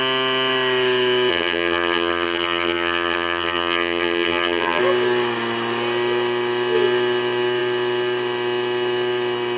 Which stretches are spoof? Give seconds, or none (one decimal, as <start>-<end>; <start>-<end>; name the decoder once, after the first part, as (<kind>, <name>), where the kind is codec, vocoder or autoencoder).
1.3-4.8 (vocoder, HiFi-GAN)